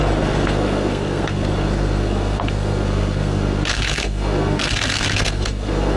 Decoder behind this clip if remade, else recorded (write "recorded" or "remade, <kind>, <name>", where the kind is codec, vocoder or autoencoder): remade, codec, SNAC